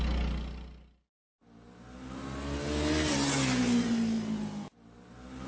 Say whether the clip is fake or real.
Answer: real